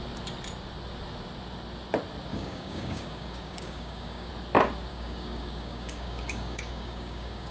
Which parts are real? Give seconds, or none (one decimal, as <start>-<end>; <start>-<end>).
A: 0.0-2.3; 4.3-4.9